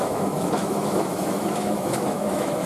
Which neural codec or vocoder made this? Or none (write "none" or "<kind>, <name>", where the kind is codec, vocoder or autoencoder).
autoencoder, DAC-VAE